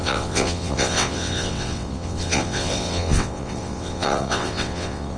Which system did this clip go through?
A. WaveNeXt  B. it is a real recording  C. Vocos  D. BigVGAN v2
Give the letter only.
A